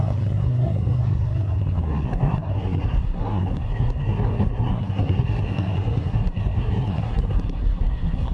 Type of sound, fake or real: fake